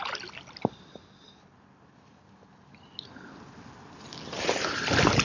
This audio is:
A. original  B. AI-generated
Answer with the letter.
A